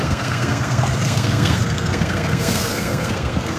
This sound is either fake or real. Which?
fake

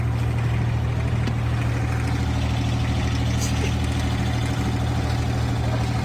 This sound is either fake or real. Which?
real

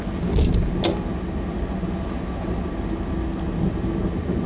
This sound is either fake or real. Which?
real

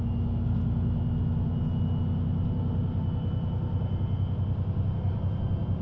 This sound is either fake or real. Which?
real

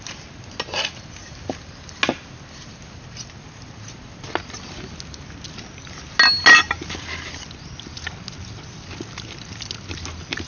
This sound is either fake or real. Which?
real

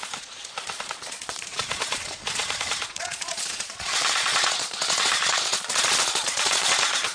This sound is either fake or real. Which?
fake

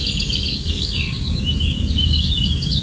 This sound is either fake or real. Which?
fake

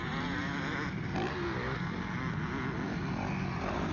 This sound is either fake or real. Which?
real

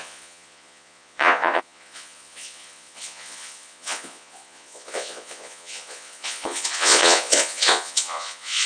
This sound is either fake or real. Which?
fake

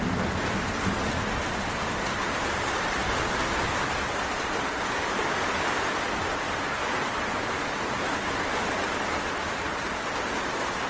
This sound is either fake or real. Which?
real